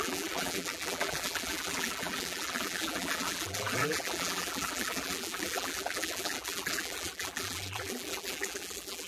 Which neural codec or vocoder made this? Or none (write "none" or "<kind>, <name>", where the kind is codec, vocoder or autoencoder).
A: vocoder, BigVGAN v2